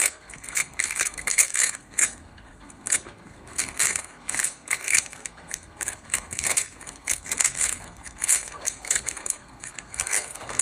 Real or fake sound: fake